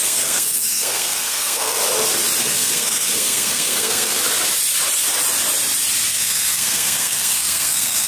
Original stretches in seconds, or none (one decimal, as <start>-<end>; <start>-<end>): 1.8-2.4; 4.2-6.1